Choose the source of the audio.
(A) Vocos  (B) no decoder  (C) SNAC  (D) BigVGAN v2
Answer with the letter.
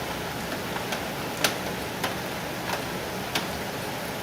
B